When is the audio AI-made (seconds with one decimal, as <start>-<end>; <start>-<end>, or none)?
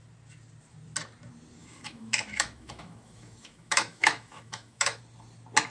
1.6-5.0